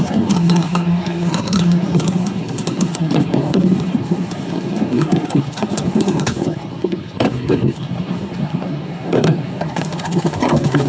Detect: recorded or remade remade